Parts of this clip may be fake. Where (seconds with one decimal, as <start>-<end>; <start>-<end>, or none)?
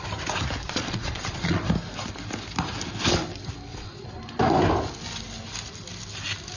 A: 0.6-1.6; 3.7-4.2